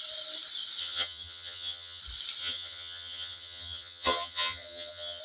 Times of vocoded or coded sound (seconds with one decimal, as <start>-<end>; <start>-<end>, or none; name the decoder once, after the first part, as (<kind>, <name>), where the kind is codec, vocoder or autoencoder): 0.8-2.0 (vocoder, HiFi-GAN); 2.4-5.2